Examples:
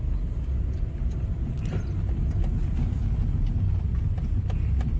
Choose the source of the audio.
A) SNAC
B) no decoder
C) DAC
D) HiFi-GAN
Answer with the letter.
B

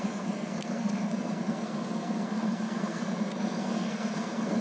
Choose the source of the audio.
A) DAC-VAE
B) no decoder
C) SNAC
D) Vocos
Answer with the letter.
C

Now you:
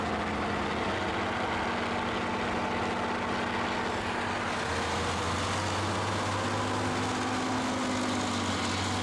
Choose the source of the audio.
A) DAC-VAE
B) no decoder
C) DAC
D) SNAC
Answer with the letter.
B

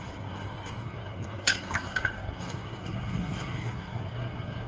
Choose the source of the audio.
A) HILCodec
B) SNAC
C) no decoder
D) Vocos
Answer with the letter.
B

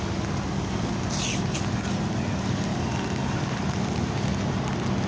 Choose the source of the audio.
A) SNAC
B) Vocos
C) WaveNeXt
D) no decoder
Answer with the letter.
D